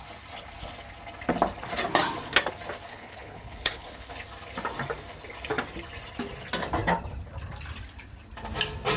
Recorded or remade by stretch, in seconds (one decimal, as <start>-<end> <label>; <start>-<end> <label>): 0.0-2.9 recorded; 2.9-4.1 remade; 4.1-9.0 recorded